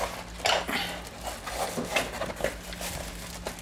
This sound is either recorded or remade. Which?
recorded